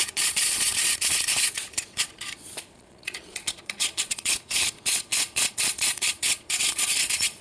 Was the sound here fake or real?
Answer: fake